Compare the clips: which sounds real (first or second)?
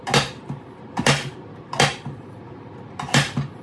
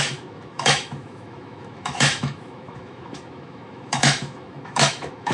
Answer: first